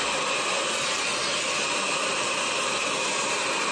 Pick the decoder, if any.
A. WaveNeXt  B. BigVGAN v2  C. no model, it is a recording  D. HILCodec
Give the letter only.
C